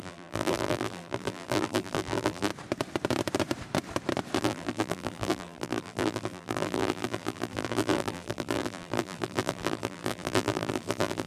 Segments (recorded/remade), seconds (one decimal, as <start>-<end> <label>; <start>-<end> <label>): 0.0-2.5 remade; 2.5-4.4 recorded; 4.4-11.3 remade

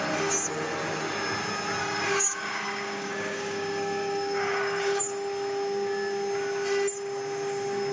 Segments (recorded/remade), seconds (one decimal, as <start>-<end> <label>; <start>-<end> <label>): 0.0-1.8 recorded; 1.8-5.0 remade; 5.0-7.9 recorded

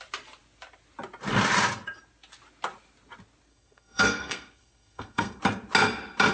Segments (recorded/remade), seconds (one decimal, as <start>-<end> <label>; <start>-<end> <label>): 0.0-3.5 recorded; 3.5-5.4 remade; 5.4-6.3 recorded